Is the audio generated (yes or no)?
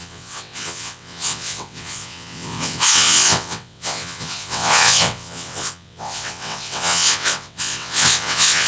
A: yes